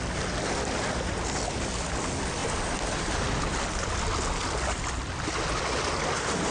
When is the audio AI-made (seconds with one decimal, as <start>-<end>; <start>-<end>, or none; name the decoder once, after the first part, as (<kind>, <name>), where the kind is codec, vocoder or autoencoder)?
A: none